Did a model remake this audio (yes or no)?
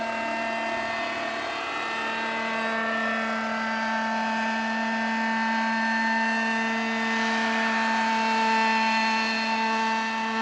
no